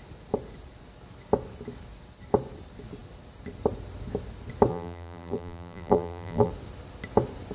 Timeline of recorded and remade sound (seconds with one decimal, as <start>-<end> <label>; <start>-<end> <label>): 0.0-4.7 recorded; 4.7-6.5 remade; 6.5-7.5 recorded